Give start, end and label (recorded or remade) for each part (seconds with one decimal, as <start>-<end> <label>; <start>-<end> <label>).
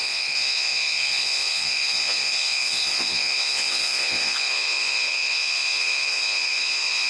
0.0-7.1 remade